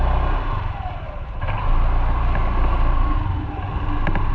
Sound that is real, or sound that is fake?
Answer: real